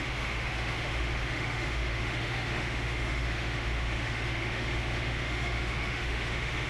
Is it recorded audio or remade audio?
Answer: remade